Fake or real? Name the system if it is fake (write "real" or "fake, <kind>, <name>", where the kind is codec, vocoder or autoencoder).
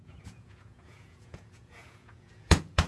fake, vocoder, Vocos